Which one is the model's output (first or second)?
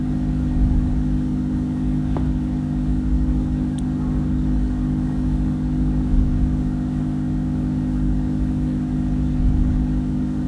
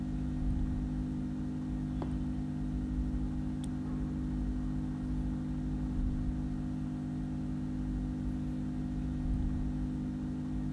first